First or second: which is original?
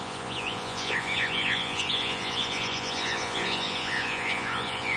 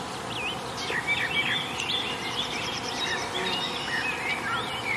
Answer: second